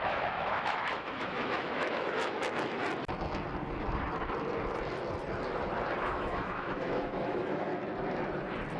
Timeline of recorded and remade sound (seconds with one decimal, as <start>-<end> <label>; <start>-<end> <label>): 0.0-2.8 remade; 2.8-6.0 recorded; 6.0-7.7 remade; 7.7-8.8 recorded

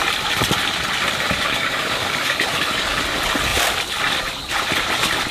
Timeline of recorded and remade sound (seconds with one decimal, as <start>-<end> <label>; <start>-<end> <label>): 0.0-1.5 recorded; 1.5-3.0 remade; 3.0-5.3 recorded

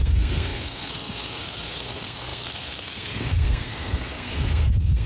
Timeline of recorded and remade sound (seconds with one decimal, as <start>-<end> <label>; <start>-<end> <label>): 0.0-5.1 remade

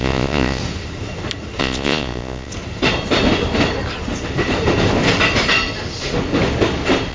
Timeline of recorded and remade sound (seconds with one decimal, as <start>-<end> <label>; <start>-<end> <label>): 0.0-0.6 remade; 0.6-1.6 recorded; 1.6-2.5 remade; 2.5-7.1 recorded

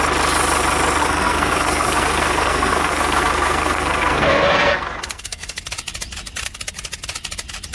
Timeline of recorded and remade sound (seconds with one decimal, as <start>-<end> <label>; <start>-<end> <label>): 0.0-1.0 recorded; 1.0-5.6 remade; 5.6-7.7 recorded

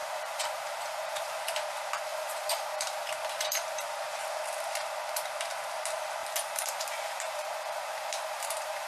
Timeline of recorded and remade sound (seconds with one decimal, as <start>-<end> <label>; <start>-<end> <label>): 0.0-1.4 remade; 1.4-2.1 recorded; 2.1-3.1 remade; 3.1-6.2 recorded; 6.2-8.9 remade

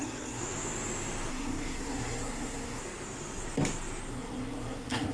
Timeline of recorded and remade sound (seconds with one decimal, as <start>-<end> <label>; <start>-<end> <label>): 0.0-0.4 remade; 0.4-1.3 recorded; 1.3-2.8 remade; 2.8-4.1 recorded; 4.1-5.1 remade